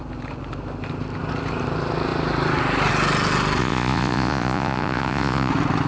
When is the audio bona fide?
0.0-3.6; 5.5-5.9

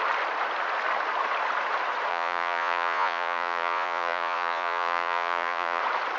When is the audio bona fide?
0.0-2.1; 5.8-6.2

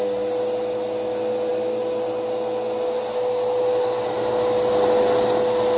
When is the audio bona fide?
0.0-5.8

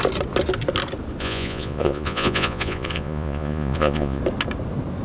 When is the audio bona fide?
0.0-1.2; 4.2-5.0

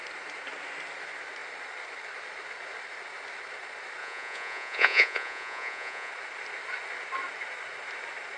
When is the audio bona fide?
0.0-4.0; 6.1-8.4